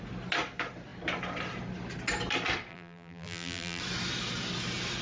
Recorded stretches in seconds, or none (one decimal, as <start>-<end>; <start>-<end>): 0.0-2.7; 3.8-5.0